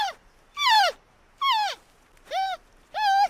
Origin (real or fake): real